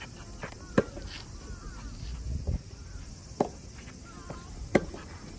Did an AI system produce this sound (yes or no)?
no